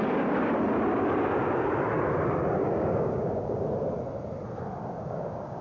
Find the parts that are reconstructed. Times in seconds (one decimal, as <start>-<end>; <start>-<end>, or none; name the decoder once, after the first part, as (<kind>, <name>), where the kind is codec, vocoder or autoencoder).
2.6-3.6 (codec, DAC); 4.8-5.6